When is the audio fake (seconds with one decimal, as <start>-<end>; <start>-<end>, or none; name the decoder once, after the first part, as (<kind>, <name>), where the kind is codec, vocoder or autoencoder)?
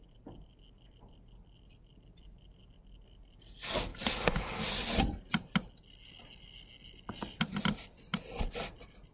none